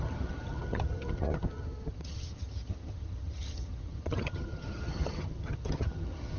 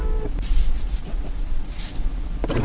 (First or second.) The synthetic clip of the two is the first